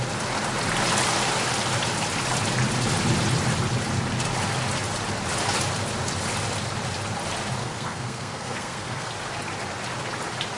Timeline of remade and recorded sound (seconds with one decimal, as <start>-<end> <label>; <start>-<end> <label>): 0.0-7.6 recorded; 7.6-9.1 remade; 9.1-10.6 recorded